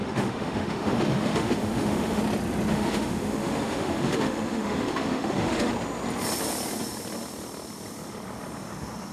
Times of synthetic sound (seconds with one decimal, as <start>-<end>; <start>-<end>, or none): 0.0-2.2; 2.7-5.7